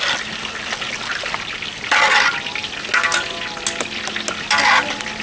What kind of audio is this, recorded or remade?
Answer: recorded